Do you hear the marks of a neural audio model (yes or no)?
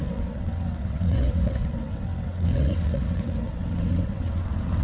yes